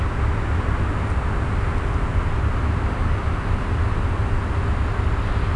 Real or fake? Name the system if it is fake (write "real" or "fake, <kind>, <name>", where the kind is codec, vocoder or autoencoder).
real